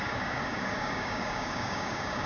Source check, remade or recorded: remade